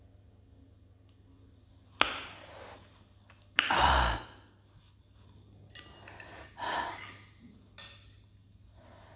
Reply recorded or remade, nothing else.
recorded